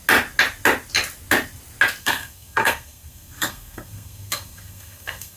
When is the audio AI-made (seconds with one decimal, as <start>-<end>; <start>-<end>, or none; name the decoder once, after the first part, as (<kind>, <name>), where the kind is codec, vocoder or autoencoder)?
2.0-5.4 (codec, SNAC)